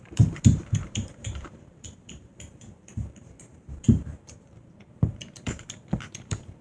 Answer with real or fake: fake